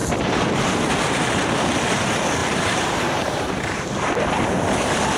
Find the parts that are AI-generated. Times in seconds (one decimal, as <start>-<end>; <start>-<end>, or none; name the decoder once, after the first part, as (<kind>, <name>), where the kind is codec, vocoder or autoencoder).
2.4-3.9 (vocoder, BigVGAN v2)